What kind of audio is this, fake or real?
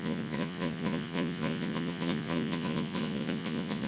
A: fake